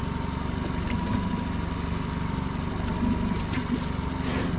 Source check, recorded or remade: recorded